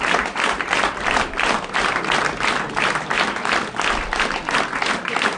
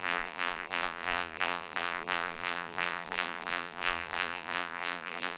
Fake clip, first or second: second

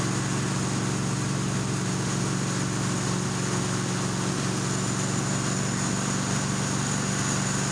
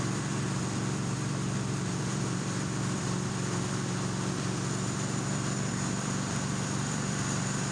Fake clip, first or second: second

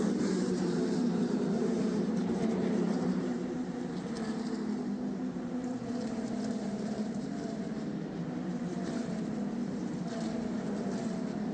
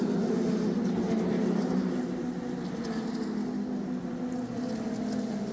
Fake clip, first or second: first